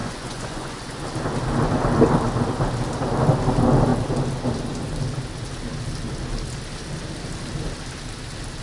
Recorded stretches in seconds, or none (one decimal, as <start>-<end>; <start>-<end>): 1.0-8.6